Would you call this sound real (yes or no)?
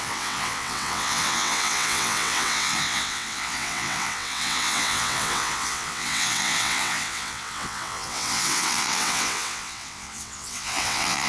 no